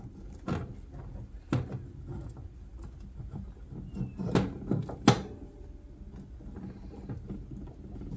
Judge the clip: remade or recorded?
recorded